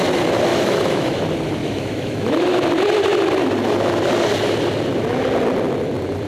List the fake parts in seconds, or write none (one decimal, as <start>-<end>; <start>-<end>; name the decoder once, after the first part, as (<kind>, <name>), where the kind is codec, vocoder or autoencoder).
0.5-1.2 (autoencoder, DAC-VAE); 1.6-2.5